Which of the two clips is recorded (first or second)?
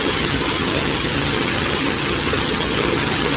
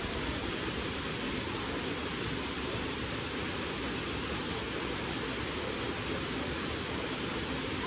second